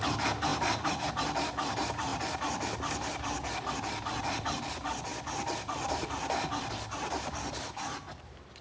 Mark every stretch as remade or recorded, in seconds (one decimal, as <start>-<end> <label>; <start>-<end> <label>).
0.0-8.6 recorded